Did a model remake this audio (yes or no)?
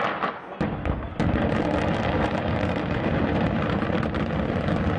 yes